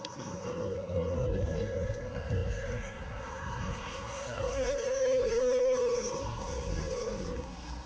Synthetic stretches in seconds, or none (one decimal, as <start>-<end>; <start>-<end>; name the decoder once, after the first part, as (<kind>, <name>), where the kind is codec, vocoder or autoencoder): 0.0-7.9 (codec, SNAC)